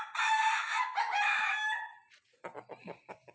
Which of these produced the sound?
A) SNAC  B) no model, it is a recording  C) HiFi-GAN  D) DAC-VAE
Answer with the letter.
B